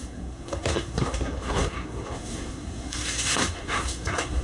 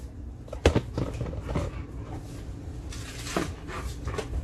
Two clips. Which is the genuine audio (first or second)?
second